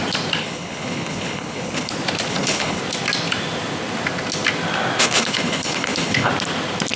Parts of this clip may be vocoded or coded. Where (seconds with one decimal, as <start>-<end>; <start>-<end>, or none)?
0.4-1.9; 2.3-2.8; 5.0-6.3